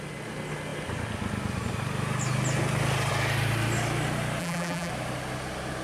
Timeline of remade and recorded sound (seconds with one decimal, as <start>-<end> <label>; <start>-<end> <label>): 0.0-4.4 recorded; 4.4-4.9 remade; 4.9-5.8 recorded